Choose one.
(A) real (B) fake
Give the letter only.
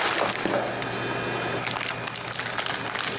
A